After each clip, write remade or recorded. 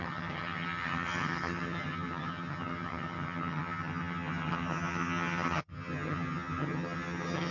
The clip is remade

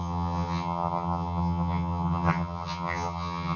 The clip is remade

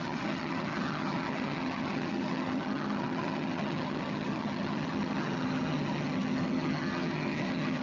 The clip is remade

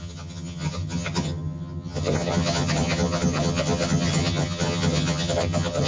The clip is remade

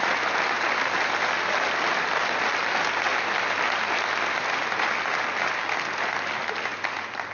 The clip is recorded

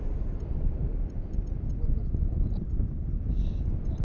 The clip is recorded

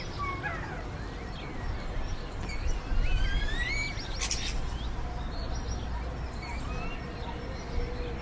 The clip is recorded